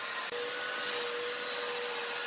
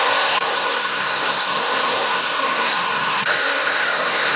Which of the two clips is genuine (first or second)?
first